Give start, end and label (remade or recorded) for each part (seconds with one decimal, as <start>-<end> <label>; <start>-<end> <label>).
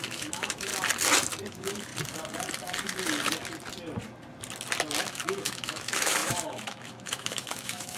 0.0-0.7 remade; 0.7-1.5 recorded; 1.5-1.9 remade; 1.9-5.0 recorded; 5.0-8.0 remade